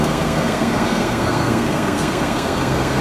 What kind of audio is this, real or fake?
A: fake